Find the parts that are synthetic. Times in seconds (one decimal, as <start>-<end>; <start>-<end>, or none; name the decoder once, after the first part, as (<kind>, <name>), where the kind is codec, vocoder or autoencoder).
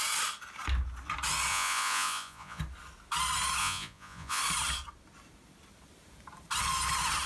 1.5-2.6 (vocoder, Vocos); 3.6-4.4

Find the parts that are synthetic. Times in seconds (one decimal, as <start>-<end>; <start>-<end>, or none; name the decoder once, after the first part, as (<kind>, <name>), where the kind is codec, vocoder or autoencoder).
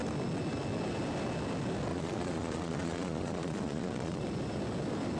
1.9-4.2 (vocoder, Vocos)